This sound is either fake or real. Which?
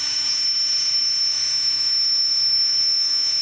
fake